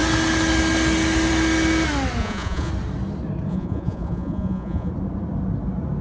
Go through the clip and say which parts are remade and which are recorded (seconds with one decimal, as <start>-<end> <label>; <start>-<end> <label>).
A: 0.0-2.2 recorded; 2.2-2.7 remade; 2.7-3.5 recorded; 3.5-4.9 remade; 4.9-6.0 recorded